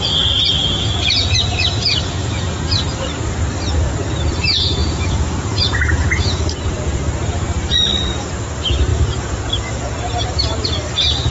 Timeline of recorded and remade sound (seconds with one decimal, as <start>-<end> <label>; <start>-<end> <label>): 0.0-0.6 recorded; 0.6-2.6 remade; 2.6-4.8 recorded; 4.8-6.5 remade; 6.5-8.9 recorded; 8.9-9.8 remade; 9.8-11.3 recorded